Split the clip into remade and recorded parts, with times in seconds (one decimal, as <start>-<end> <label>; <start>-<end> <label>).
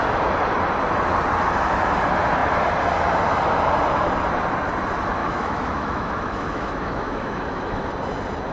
0.0-5.2 recorded; 5.2-7.9 remade; 7.9-8.5 recorded